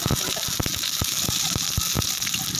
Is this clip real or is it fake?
real